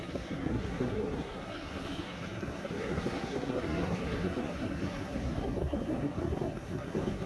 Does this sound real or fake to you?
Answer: fake